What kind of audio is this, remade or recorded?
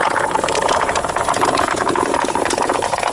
remade